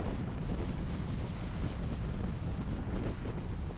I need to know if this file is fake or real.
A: real